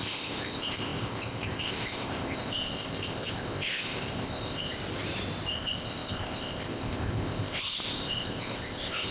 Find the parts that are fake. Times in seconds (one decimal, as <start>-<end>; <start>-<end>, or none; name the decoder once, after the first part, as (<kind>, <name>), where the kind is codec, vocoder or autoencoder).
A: 0.0-4.8 (codec, ZipCodec); 5.5-9.1